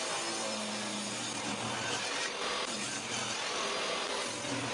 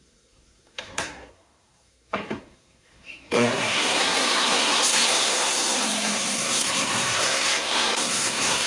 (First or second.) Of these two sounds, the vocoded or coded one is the second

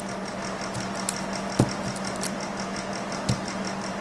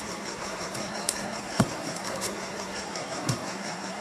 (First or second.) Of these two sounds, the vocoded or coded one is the second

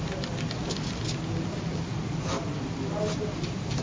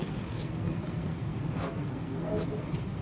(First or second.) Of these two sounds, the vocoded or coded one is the second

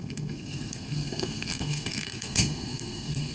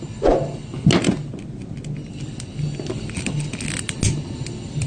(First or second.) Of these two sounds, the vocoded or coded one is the first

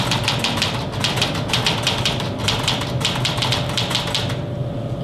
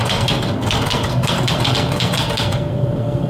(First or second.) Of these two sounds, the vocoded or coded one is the second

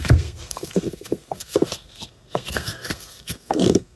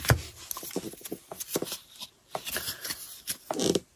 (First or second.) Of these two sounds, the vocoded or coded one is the first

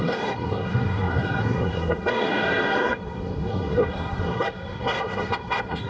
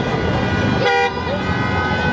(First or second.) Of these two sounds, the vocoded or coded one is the first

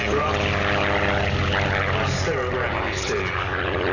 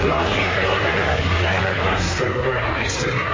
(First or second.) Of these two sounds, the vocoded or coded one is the second